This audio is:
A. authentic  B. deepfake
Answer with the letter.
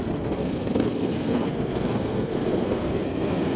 B